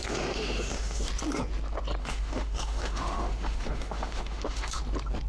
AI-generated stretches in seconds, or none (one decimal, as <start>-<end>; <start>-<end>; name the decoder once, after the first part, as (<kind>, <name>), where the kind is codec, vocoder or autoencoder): 0.0-1.1 (autoencoder, DAC-VAE); 2.0-4.8